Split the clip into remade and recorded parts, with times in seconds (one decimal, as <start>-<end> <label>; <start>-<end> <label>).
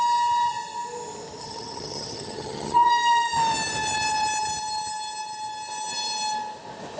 0.0-1.4 recorded; 1.4-2.9 remade; 2.9-7.0 recorded